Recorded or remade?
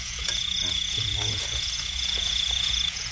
remade